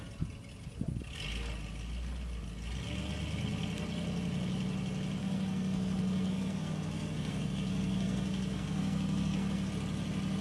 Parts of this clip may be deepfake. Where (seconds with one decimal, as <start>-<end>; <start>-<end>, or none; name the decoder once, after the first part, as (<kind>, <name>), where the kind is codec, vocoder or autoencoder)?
5.2-9.7 (codec, SNAC)